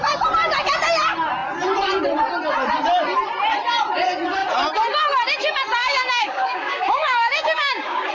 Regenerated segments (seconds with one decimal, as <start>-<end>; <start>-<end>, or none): 5.8-8.1